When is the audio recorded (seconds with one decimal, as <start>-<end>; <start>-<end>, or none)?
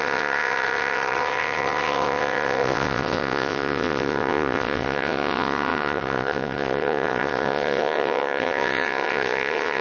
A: none